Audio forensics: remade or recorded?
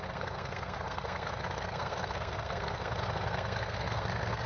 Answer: remade